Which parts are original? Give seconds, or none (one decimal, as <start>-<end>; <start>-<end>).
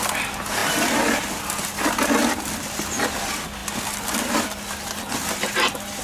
0.0-6.0